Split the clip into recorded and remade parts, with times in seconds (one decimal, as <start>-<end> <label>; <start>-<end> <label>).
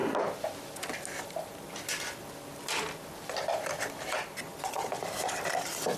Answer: 0.0-6.0 recorded